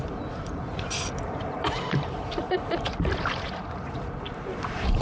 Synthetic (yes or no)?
yes